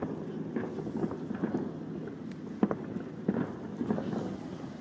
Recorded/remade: recorded